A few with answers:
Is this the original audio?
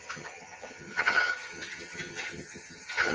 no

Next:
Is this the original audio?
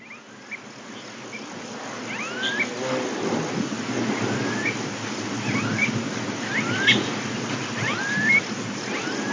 yes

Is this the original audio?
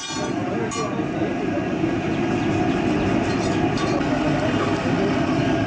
yes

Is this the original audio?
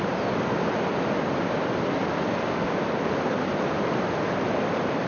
yes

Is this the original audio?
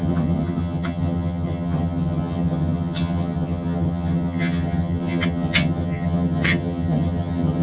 no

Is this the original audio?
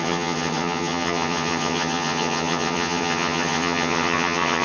no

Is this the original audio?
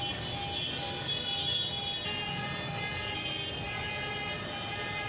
yes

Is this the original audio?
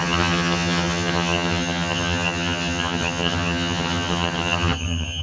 no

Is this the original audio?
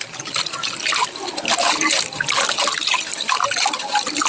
yes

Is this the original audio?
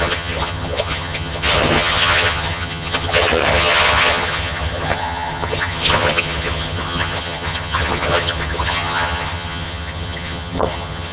no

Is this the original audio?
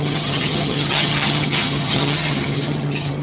no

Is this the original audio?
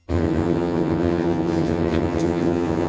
no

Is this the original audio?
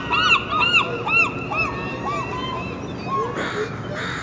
yes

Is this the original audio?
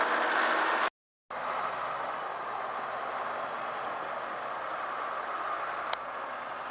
yes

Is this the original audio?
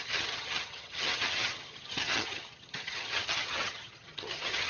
no